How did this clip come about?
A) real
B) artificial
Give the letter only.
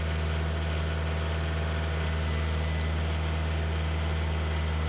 A